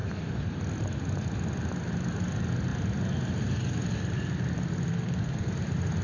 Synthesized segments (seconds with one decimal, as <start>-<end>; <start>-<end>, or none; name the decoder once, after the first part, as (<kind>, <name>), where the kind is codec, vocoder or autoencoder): 4.9-5.5 (codec, SNAC)